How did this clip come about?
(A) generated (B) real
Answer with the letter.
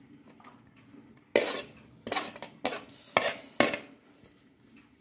B